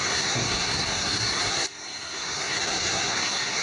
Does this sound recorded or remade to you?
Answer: remade